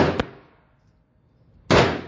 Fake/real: real